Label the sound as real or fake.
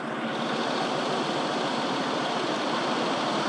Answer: real